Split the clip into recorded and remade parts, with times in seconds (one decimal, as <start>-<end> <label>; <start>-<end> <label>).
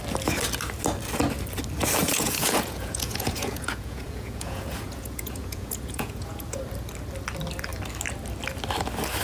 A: 0.0-2.0 recorded; 2.0-6.6 remade; 6.6-9.2 recorded